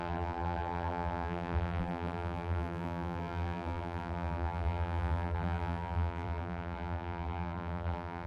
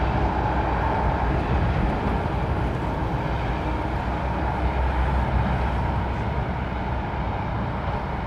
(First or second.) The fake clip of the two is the first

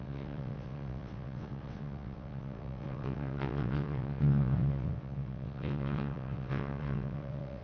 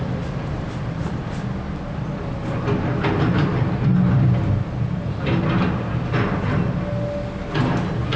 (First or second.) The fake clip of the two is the first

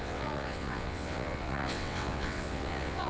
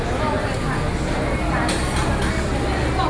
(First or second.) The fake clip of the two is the first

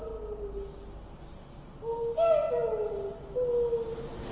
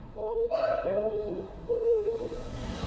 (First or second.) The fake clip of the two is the second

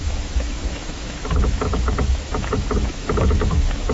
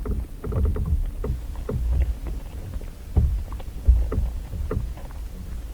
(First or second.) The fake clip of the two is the first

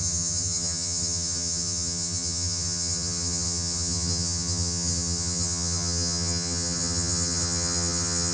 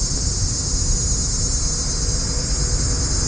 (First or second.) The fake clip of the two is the first